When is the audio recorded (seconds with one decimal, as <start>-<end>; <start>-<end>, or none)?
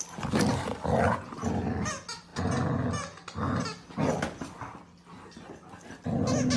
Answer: 0.0-6.6